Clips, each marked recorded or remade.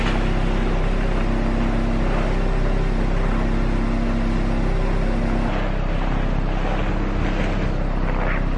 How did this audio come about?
recorded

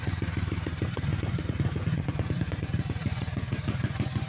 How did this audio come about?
remade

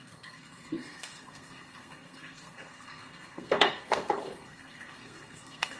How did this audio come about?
remade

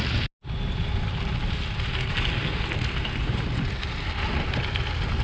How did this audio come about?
recorded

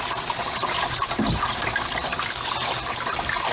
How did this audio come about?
remade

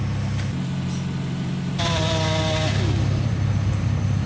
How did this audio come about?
remade